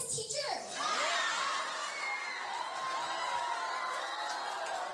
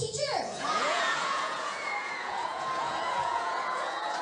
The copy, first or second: second